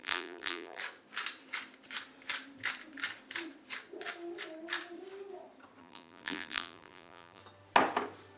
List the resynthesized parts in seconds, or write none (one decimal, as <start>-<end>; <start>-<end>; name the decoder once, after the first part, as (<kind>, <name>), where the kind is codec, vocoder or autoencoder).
0.0-0.8 (vocoder, BigVGAN v2); 5.8-7.4